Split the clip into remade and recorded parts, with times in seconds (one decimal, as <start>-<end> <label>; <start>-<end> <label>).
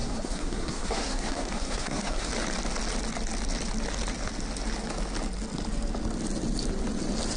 0.0-2.3 remade; 2.3-7.4 recorded